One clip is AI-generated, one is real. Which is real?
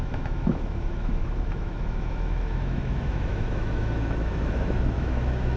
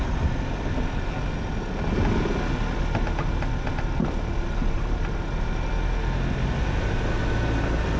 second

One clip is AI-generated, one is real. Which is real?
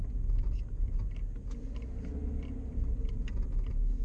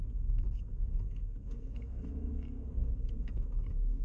first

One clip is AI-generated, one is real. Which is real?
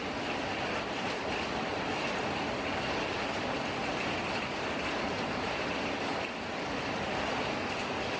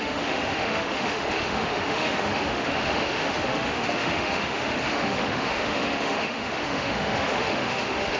first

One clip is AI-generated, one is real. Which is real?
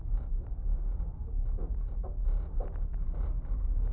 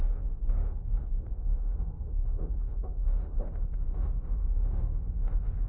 first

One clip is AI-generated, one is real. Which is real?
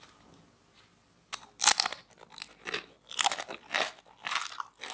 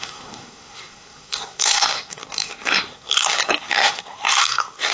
first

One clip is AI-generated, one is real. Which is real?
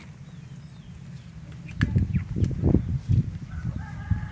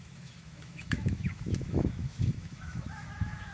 first